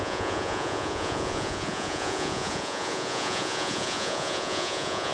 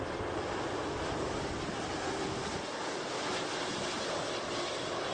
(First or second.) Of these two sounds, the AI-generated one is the first